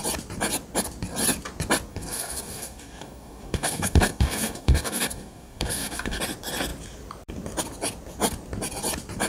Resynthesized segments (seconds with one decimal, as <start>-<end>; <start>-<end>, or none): 1.9-6.2